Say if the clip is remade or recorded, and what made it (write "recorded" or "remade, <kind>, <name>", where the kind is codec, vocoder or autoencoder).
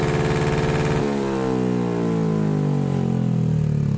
recorded